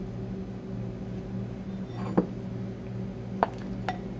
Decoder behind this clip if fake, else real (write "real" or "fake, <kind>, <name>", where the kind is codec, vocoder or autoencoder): real